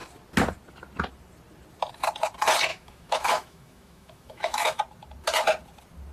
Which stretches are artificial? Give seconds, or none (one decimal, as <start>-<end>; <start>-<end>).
2.7-4.8